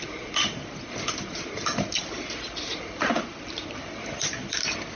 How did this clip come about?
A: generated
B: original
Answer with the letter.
B